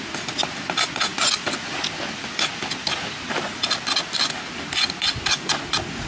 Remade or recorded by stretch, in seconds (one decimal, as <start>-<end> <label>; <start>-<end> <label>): 0.0-6.1 recorded